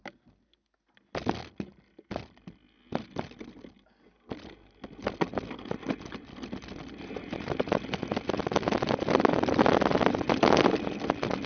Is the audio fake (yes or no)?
no